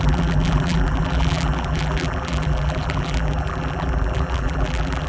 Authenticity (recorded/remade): remade